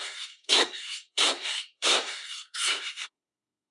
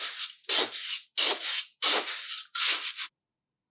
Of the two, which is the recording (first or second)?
second